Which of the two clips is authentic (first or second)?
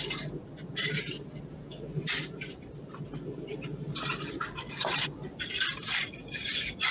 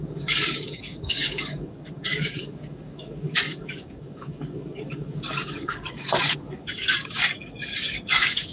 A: first